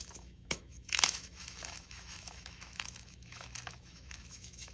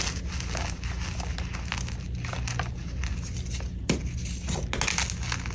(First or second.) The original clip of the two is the second